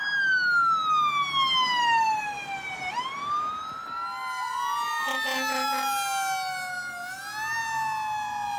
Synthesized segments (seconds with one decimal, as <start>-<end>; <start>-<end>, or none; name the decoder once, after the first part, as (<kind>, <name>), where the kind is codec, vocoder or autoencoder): none